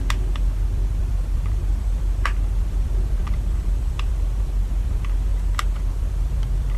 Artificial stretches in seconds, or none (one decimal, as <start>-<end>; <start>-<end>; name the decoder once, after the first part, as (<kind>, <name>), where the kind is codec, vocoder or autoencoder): 0.0-5.3 (vocoder, BigVGAN v2); 5.9-6.8